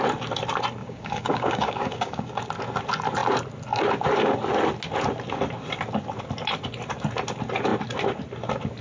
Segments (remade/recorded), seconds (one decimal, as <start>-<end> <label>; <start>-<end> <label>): 0.0-0.8 recorded; 0.8-2.3 remade; 2.3-8.8 recorded